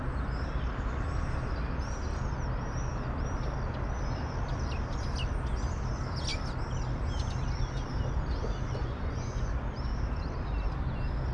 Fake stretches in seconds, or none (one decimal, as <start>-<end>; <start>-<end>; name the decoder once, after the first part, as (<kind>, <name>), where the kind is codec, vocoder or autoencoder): 8.8-9.5 (vocoder, Vocos)